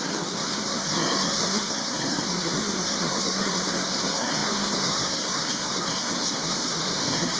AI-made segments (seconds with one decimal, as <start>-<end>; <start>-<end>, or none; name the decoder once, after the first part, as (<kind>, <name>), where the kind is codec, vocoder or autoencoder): 0.0-7.4 (codec, SNAC)